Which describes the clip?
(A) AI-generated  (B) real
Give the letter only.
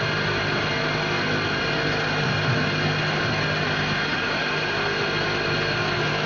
B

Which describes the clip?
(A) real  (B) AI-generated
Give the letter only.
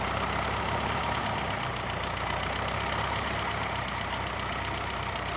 A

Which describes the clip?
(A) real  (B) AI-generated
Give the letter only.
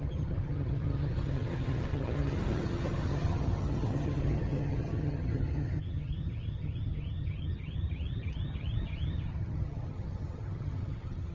B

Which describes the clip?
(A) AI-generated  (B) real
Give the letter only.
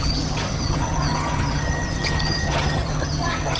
A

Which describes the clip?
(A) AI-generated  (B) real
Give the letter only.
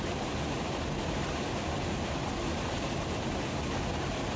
B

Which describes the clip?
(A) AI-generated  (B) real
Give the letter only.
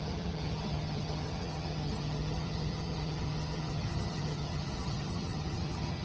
A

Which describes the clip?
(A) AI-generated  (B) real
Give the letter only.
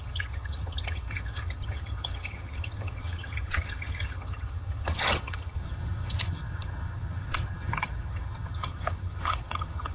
A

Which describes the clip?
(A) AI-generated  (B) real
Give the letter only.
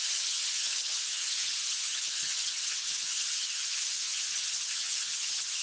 A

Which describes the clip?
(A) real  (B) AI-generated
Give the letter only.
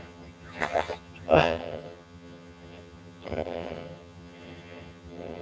B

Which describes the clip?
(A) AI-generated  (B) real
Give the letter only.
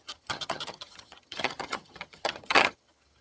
A